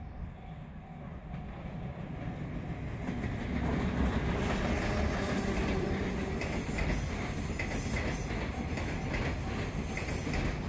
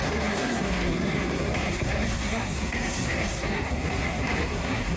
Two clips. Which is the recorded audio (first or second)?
first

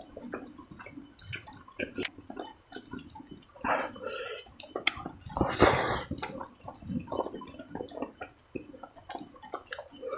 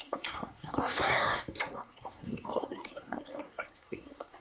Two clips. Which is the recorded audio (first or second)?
first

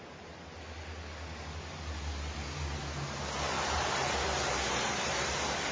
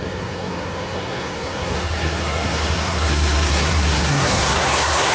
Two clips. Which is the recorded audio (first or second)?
first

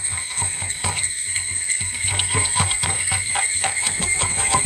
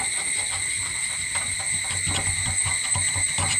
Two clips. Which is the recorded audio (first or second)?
second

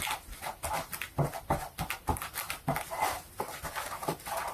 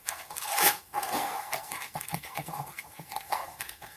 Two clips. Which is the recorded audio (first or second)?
first